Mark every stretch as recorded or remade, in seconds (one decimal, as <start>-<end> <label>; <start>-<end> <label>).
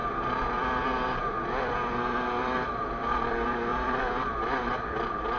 0.0-2.4 recorded; 2.4-2.9 remade; 2.9-3.7 recorded; 3.7-5.4 remade